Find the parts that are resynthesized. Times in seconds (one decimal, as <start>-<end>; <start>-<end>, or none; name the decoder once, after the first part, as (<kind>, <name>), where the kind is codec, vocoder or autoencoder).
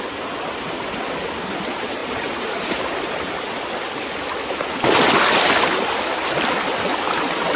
2.0-3.2 (vocoder, BigVGAN v2)